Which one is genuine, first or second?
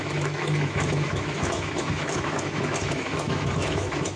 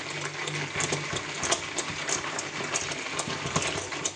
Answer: second